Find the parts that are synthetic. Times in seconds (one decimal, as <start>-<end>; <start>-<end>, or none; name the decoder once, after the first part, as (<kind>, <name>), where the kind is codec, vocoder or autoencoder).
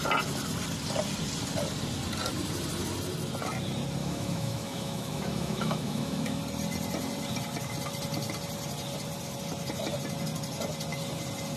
4.0-6.4 (autoencoder, DAC-VAE)